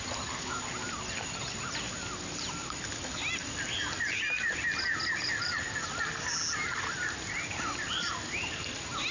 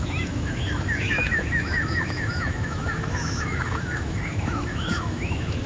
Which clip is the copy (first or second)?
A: second